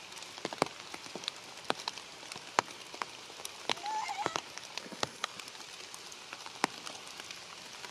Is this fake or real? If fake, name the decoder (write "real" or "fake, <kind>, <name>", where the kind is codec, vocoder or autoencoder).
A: real